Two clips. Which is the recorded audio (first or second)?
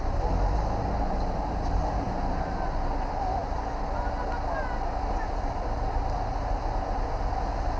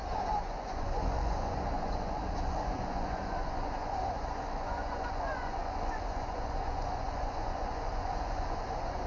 first